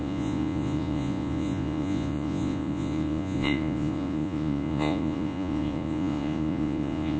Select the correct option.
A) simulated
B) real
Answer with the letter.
A